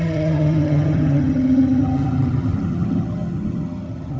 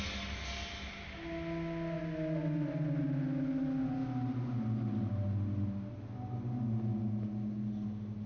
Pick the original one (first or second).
second